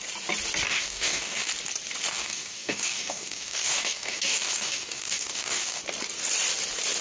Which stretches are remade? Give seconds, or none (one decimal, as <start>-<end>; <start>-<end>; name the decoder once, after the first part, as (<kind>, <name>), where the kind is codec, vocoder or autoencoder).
0.7-1.5 (codec, DAC); 2.1-5.8